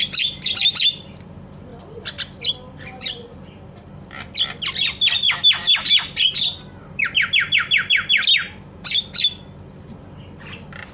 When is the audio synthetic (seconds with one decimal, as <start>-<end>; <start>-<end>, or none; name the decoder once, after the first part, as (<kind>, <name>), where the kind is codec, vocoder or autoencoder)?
1.7-4.0 (vocoder, BigVGAN v2)